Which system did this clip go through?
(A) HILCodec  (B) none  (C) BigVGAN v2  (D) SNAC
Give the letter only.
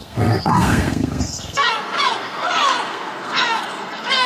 D